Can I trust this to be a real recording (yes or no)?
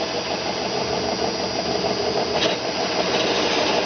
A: yes